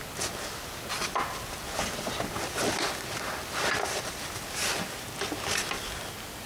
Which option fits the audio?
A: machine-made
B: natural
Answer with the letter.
B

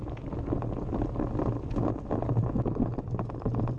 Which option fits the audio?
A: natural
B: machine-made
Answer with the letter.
A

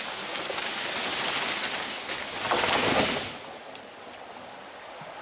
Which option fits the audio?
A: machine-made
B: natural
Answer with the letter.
B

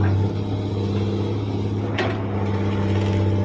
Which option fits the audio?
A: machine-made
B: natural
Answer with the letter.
B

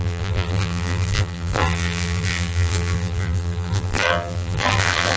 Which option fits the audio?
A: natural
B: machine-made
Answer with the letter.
B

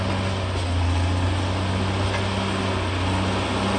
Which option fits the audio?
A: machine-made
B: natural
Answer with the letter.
B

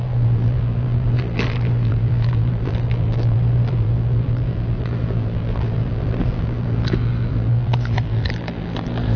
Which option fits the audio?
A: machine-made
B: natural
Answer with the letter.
A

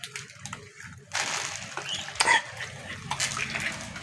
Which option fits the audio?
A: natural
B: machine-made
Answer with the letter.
A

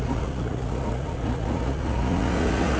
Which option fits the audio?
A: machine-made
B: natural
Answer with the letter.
A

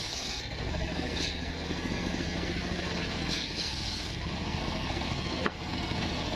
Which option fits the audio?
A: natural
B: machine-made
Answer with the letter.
B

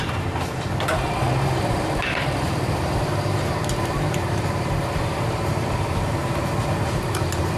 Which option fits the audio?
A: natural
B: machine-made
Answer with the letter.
B